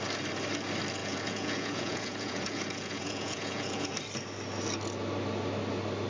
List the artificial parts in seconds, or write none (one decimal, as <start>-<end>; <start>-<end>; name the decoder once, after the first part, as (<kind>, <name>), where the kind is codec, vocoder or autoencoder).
1.0-3.9 (vocoder, Vocos)